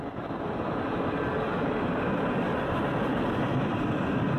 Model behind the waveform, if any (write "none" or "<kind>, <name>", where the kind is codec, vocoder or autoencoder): vocoder, BigVGAN v2